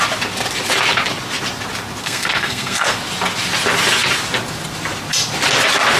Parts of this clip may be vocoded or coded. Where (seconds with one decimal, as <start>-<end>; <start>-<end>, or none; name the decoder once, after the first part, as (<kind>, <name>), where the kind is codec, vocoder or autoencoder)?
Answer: 2.0-3.0 (codec, SNAC)